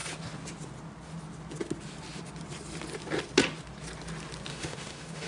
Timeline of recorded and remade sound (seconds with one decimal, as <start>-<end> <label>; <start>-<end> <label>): 0.0-4.5 recorded; 4.5-5.3 remade